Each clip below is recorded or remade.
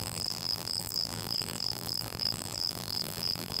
remade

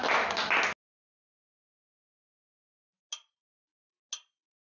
recorded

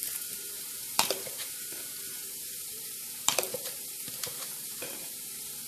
remade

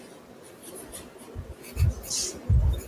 recorded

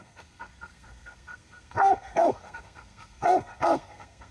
remade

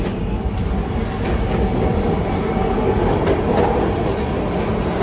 recorded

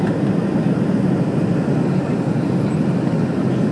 recorded